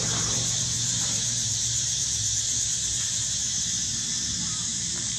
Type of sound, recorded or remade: remade